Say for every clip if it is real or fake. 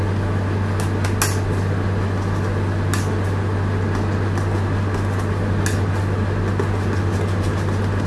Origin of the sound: real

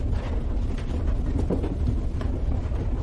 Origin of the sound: real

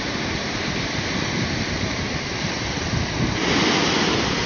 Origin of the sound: real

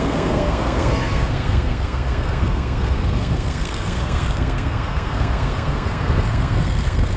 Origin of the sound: fake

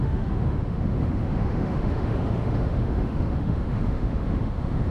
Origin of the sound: fake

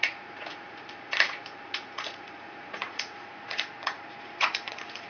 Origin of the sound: fake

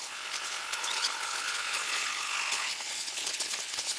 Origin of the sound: fake